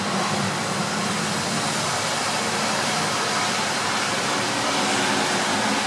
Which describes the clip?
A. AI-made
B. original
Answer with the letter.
B